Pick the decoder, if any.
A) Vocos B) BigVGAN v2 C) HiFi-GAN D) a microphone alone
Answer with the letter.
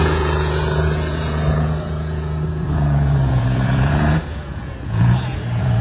A